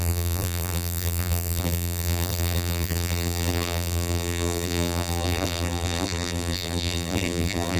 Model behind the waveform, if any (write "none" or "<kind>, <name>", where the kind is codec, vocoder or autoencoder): vocoder, BigVGAN v2